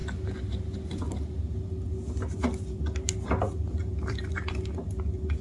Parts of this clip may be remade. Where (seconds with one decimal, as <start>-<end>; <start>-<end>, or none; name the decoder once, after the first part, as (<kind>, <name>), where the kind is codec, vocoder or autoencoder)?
3.9-4.5 (vocoder, BigVGAN v2)